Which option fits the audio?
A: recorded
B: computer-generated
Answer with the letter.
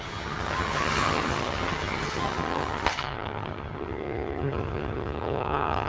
B